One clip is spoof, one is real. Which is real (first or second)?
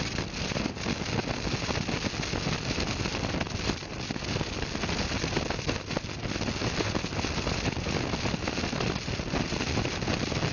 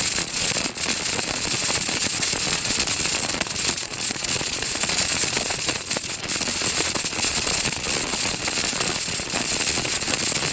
first